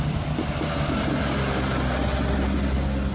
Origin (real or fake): real